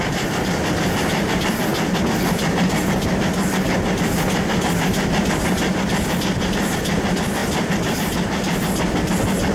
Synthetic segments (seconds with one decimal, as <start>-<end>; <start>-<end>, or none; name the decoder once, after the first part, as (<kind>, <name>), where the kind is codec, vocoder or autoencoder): none